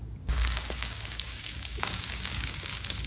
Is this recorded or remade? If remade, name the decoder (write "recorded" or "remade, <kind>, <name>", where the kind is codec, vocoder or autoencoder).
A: remade, codec, DAC